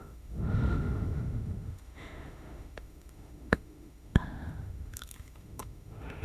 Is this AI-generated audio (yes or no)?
yes